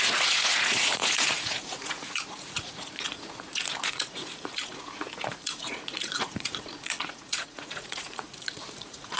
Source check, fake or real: fake